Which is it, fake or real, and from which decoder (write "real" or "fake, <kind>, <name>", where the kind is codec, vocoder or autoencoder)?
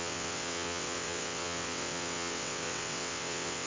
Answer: fake, vocoder, WaveNeXt